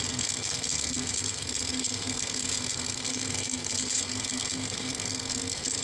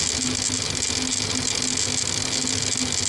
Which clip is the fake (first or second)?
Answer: first